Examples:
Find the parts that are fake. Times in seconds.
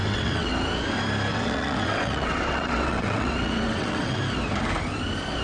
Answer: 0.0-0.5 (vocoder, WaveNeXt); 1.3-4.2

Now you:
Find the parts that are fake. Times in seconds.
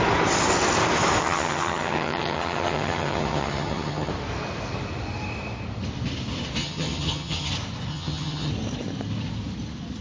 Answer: 1.2-4.1 (vocoder, HiFi-GAN); 6.6-7.5; 7.9-8.5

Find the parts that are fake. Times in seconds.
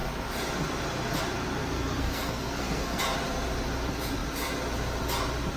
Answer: 1.6-3.0 (codec, SNAC)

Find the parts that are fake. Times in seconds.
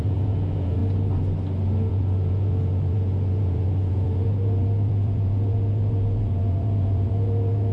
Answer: 0.0-0.8 (vocoder, Vocos); 1.9-7.7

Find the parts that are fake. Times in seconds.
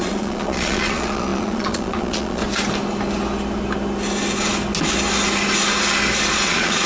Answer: 0.0-2.4 (vocoder, Vocos); 6.3-6.9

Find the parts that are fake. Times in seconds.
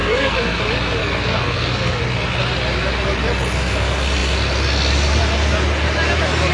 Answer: 0.0-0.6 (codec, SNAC); 1.0-2.0